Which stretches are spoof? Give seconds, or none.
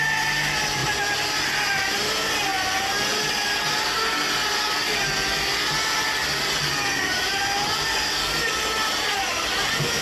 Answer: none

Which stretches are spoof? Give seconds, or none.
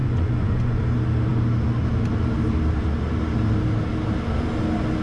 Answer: 0.0-0.8 (vocoder, Vocos)